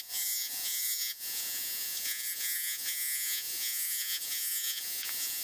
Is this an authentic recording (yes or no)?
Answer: no